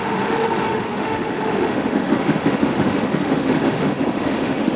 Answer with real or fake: fake